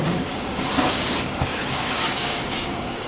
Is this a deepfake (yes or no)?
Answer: yes